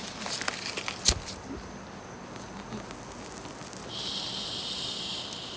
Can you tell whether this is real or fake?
real